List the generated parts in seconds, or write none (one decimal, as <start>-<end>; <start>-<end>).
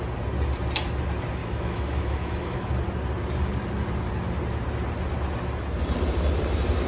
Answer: 1.4-2.7